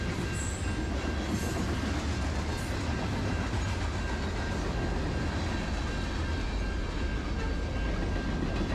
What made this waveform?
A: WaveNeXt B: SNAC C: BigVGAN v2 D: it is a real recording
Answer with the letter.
D